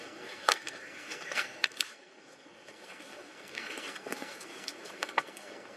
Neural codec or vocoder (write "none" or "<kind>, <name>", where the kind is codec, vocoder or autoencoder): codec, SNAC